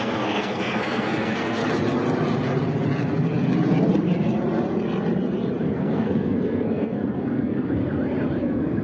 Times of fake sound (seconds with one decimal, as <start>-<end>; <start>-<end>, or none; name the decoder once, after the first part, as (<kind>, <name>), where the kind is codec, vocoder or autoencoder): 0.0-1.6 (codec, SNAC); 5.7-7.8; 8.4-8.8